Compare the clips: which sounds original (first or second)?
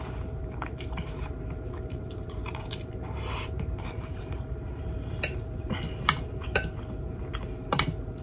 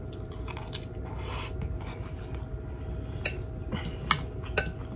second